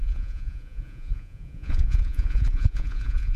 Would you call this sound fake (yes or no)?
yes